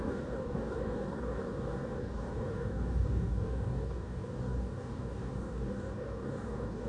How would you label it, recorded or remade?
remade